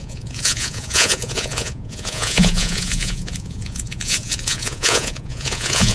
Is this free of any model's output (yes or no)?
no